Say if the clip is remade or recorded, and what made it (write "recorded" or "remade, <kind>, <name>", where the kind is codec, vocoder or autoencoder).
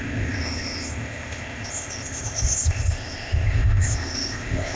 remade, codec, ZipCodec